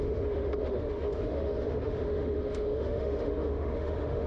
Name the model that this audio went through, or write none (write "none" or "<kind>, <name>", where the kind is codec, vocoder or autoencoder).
autoencoder, DAC-VAE